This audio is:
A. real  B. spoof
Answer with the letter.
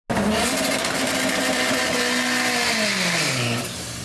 A